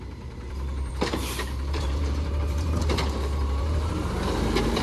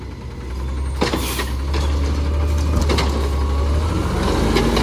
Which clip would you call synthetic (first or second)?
first